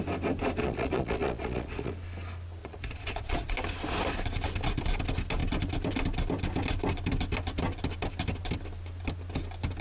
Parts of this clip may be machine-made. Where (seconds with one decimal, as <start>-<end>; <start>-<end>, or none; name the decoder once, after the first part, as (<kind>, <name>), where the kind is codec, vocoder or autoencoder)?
0.6-1.9 (vocoder, Vocos); 2.6-3.5